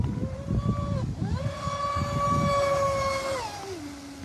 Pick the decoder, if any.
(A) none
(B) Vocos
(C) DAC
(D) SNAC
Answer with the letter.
A